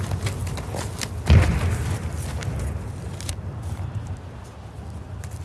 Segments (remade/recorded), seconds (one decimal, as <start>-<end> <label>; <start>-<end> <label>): 0.0-5.4 recorded